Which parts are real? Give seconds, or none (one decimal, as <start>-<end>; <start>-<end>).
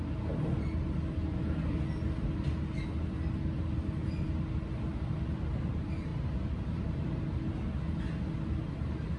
0.0-6.1; 7.5-9.2